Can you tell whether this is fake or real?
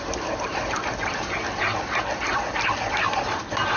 fake